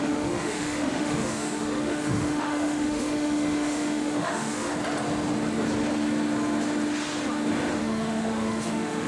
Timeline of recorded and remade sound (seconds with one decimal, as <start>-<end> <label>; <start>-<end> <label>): 0.0-4.7 remade; 4.7-7.8 recorded; 7.8-9.1 remade

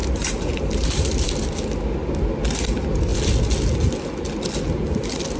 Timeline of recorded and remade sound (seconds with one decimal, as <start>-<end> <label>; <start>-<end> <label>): 0.0-1.4 remade; 1.4-5.4 recorded